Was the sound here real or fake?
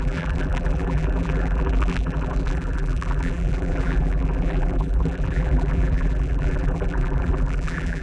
fake